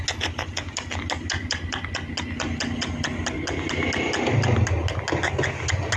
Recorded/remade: recorded